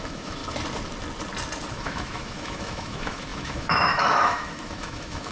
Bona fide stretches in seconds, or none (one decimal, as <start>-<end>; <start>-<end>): 0.4-1.7